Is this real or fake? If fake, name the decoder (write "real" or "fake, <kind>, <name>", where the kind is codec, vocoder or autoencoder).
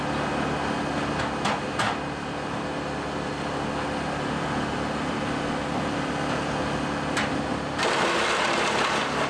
real